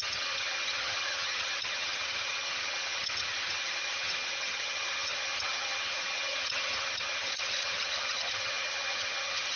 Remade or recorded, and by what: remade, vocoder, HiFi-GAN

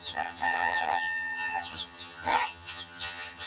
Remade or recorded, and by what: remade, vocoder, HiFi-GAN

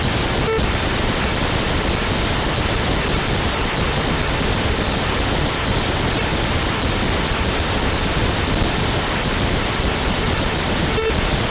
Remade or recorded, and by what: recorded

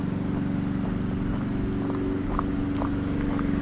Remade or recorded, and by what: recorded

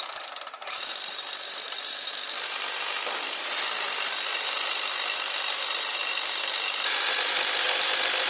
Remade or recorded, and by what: recorded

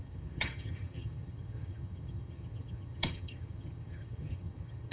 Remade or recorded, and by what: remade, vocoder, HiFi-GAN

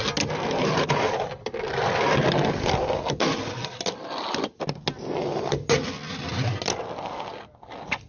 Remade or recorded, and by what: recorded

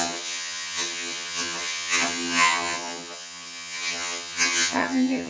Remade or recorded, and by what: remade, vocoder, HiFi-GAN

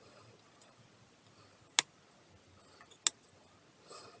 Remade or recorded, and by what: recorded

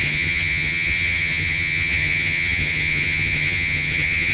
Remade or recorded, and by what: remade, vocoder, HiFi-GAN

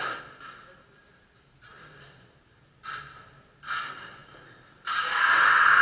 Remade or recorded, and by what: recorded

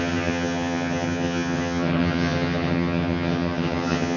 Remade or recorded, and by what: remade, vocoder, HiFi-GAN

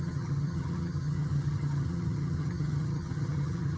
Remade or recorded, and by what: remade, vocoder, HiFi-GAN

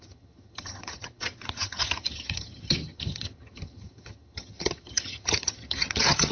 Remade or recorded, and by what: remade, vocoder, HiFi-GAN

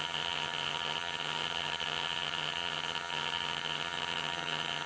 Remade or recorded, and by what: remade, vocoder, HiFi-GAN